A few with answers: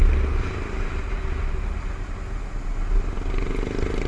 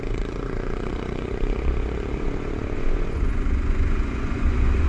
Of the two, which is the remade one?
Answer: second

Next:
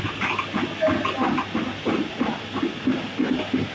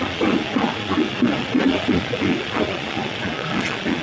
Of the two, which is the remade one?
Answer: second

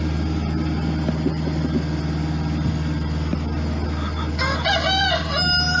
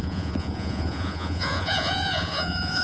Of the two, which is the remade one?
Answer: second